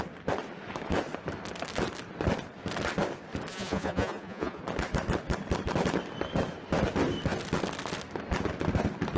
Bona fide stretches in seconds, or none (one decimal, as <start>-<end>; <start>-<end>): 0.0-3.5; 4.6-9.2